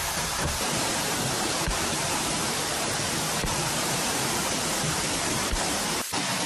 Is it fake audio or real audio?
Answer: fake